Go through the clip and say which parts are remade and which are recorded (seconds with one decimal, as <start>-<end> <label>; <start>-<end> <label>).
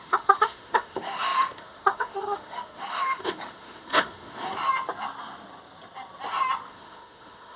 0.0-4.5 remade; 4.5-6.7 recorded; 6.7-7.6 remade